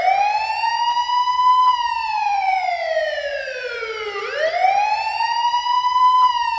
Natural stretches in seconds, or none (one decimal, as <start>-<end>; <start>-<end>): 0.0-2.0; 2.7-3.3; 6.0-6.6